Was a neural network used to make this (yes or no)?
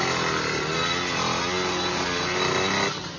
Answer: no